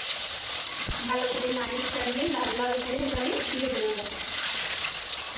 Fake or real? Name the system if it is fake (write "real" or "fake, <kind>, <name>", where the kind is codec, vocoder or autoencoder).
fake, vocoder, Vocos